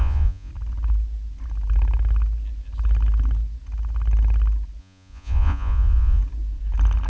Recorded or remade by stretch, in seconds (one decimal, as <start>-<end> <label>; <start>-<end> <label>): 0.0-0.5 remade; 0.5-4.8 recorded; 4.8-6.2 remade; 6.2-7.1 recorded